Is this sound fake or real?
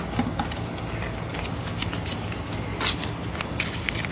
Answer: real